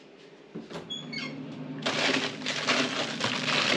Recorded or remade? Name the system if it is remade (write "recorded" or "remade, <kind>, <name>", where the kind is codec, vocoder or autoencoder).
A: recorded